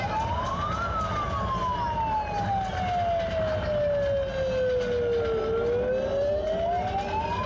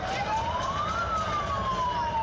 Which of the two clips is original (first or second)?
first